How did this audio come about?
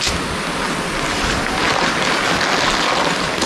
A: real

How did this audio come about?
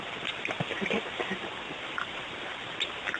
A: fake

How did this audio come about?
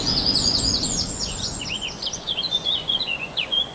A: fake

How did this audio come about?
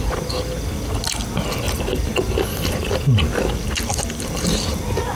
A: real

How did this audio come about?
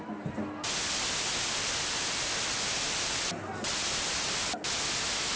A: real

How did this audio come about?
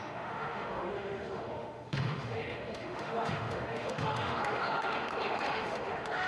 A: fake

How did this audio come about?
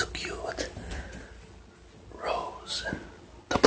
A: real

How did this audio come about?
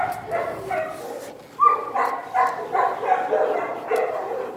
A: real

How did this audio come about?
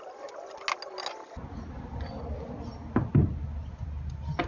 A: real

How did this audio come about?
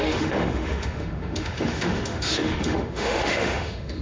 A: fake